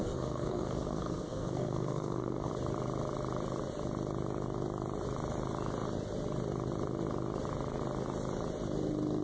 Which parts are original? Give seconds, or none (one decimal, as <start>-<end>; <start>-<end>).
2.5-9.2